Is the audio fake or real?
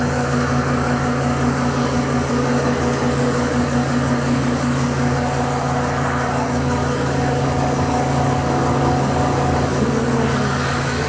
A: fake